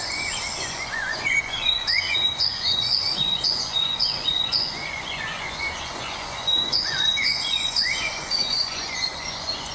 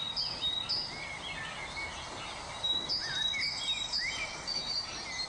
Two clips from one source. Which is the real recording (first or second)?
second